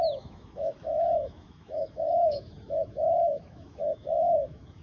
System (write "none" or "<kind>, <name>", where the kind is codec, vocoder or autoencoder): autoencoder, DAC-VAE